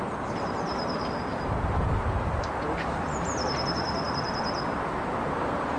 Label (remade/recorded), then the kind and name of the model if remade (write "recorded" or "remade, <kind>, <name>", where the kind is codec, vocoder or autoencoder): remade, vocoder, BigVGAN v2